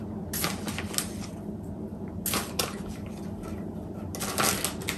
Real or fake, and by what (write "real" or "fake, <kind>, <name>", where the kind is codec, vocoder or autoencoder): real